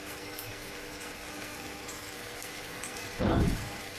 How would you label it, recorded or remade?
remade